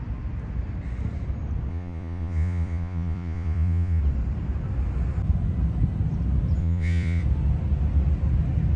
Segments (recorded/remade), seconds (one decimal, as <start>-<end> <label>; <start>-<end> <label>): 0.0-1.7 recorded; 1.7-4.0 remade; 4.0-6.6 recorded; 6.6-7.2 remade; 7.2-8.8 recorded